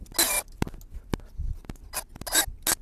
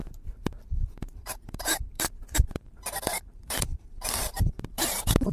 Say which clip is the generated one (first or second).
second